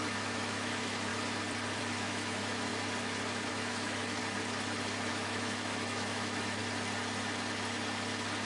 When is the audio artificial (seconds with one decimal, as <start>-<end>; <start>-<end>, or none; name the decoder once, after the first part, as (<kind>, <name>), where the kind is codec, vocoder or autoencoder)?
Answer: 0.0-1.1 (autoencoder, DAC-VAE); 1.8-2.7; 3.5-4.2; 5.1-6.6

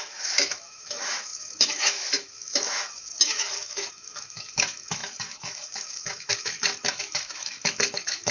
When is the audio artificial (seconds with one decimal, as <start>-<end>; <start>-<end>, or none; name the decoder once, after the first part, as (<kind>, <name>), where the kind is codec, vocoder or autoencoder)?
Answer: 0.0-8.3 (autoencoder, DAC-VAE)

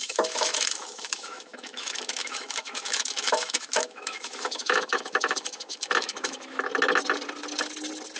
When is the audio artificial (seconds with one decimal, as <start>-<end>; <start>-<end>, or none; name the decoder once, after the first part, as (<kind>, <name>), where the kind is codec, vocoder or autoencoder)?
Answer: 0.0-6.7 (autoencoder, DAC-VAE)

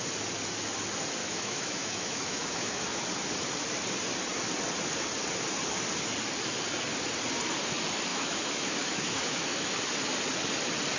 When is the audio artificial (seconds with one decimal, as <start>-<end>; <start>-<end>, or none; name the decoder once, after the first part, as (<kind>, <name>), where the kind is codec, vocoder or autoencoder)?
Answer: 1.2-3.0 (autoencoder, DAC-VAE); 8.1-9.8